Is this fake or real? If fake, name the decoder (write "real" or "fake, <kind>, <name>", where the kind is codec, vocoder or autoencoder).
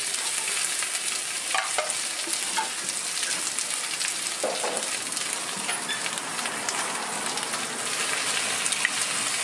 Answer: real